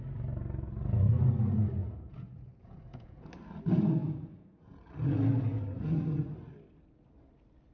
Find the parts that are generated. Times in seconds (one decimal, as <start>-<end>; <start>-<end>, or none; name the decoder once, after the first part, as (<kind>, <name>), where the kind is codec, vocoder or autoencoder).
1.8-3.3 (vocoder, Vocos); 4.0-4.8